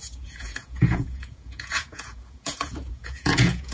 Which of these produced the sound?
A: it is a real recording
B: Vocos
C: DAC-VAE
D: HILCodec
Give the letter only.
B